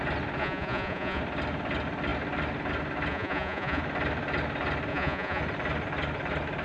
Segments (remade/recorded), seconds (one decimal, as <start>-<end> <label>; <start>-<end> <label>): 0.0-0.4 recorded; 0.4-1.2 remade; 1.2-3.1 recorded; 3.1-3.8 remade; 3.8-4.9 recorded; 4.9-5.4 remade; 5.4-6.6 recorded